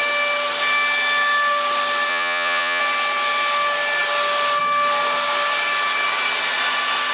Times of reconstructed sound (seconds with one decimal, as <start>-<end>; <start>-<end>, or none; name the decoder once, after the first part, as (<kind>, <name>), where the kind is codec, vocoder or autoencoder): 2.1-2.8 (vocoder, Vocos)